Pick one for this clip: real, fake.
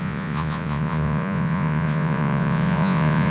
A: fake